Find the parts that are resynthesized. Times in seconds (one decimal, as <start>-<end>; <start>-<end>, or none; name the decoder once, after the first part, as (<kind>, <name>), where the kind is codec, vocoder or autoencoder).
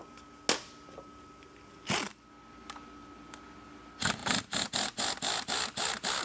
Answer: none